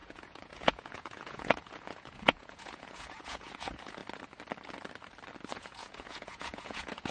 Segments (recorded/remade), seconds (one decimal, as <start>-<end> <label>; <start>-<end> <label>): 0.0-4.0 remade; 4.0-5.5 recorded; 5.5-7.1 remade